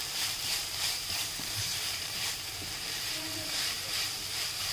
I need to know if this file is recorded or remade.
remade